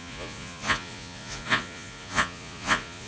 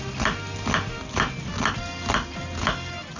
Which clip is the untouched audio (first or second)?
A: second